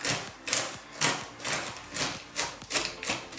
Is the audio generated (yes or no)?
no